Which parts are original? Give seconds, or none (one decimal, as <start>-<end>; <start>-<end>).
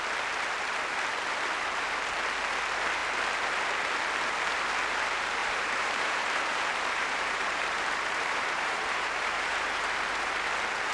0.0-5.4; 10.5-10.9